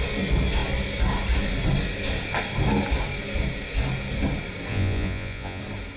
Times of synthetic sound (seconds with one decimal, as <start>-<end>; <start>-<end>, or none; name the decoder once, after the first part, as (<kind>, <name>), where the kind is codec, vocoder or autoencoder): 4.7-5.6 (vocoder, Vocos)